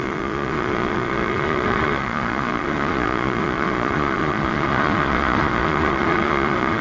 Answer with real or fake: fake